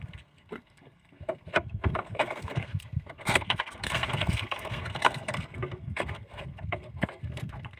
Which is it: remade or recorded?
remade